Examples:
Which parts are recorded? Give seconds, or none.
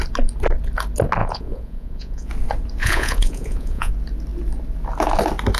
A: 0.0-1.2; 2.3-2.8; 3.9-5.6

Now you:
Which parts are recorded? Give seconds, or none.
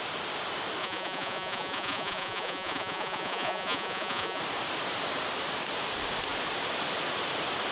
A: 0.0-0.8; 4.4-7.7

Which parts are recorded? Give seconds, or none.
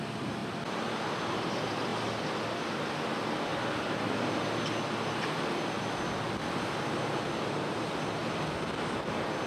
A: 0.0-9.5